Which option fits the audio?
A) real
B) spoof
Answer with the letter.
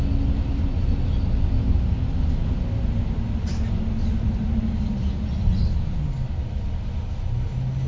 A